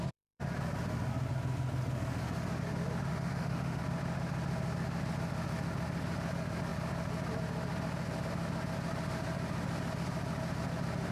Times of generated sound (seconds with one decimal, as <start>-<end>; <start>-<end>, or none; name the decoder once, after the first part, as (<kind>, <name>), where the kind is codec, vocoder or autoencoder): 3.1-3.8 (autoencoder, DAC-VAE)